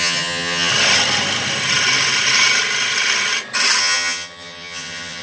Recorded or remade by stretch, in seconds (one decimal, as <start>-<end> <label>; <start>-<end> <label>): 0.0-0.7 remade; 0.7-3.8 recorded; 3.8-5.2 remade